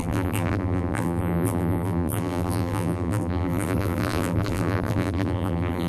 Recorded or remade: remade